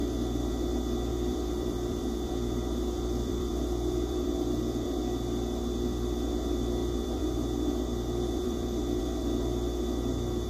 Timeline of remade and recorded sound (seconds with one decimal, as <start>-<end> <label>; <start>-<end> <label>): 0.0-1.1 recorded; 1.1-5.0 remade; 5.0-6.8 recorded; 6.8-9.0 remade; 9.0-10.5 recorded